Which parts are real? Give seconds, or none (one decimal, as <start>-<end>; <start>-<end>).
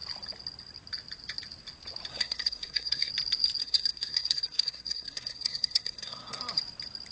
0.0-2.1; 3.1-3.6; 6.4-7.1